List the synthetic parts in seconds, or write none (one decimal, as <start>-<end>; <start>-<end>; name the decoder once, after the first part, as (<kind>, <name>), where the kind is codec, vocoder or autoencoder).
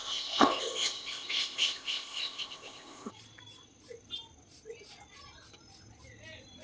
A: 0.0-3.1 (codec, ZipCodec)